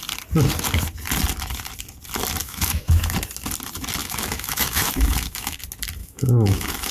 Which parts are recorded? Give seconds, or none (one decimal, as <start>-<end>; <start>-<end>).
0.0-2.4; 3.0-4.0; 5.6-6.0